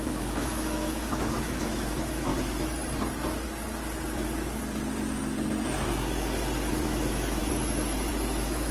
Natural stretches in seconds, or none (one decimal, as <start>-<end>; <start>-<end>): 2.3-6.8; 7.4-8.1